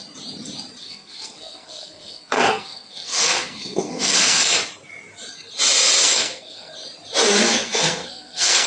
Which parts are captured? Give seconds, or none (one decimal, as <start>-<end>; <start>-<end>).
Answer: 0.0-0.8; 4.6-6.0; 6.7-7.4